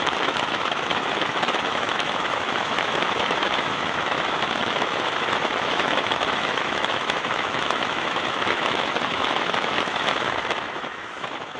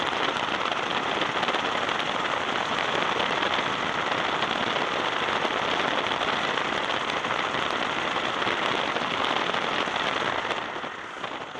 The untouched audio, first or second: second